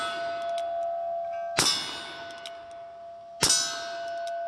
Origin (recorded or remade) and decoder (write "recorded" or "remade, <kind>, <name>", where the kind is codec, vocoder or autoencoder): recorded